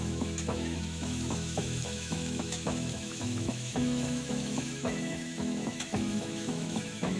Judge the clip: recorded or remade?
remade